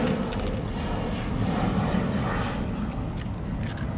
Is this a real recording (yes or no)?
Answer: yes